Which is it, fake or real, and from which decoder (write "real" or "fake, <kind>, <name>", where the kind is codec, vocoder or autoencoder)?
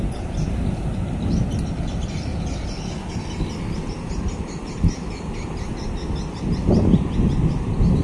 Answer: real